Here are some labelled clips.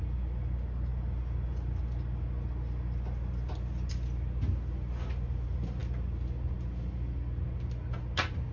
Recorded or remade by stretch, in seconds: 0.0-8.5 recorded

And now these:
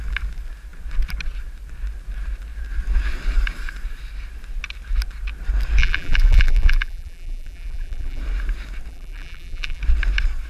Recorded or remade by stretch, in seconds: 0.0-5.8 recorded; 5.8-8.2 remade; 8.2-8.9 recorded; 8.9-9.8 remade; 9.8-10.5 recorded

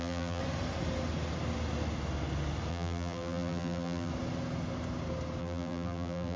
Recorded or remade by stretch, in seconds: 0.0-0.4 remade; 0.4-2.7 recorded; 2.7-4.1 remade; 4.1-5.4 recorded; 5.4-6.4 remade

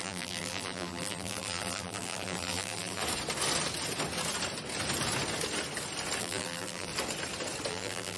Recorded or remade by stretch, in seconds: 0.0-3.0 remade; 3.0-6.2 recorded; 6.2-6.9 remade; 6.9-7.7 recorded; 7.7-8.2 remade